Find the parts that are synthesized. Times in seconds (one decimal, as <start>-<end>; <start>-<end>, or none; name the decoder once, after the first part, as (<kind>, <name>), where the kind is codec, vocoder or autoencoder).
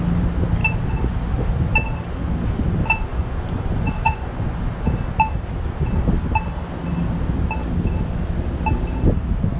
3.1-4.7 (vocoder, Vocos)